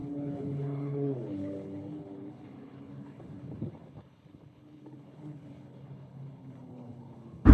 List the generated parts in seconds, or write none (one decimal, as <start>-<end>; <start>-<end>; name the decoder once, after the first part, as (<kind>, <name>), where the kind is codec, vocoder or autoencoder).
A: 0.0-7.5 (codec, HILCodec)